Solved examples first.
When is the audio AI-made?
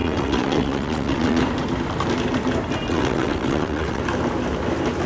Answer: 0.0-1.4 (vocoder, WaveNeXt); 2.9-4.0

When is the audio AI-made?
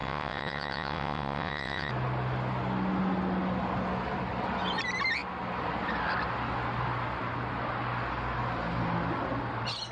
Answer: 0.0-1.9 (vocoder, WaveNeXt)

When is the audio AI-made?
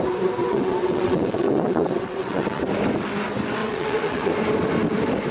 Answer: 0.4-2.6 (vocoder, WaveNeXt); 3.6-4.3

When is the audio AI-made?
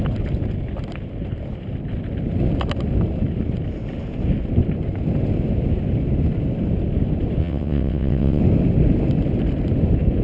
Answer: 7.4-8.4 (vocoder, WaveNeXt)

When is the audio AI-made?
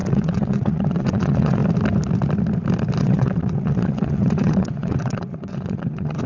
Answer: 0.0-1.6 (vocoder, WaveNeXt); 3.0-6.3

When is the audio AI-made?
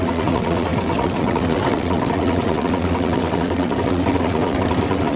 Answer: 0.0-5.2 (vocoder, WaveNeXt)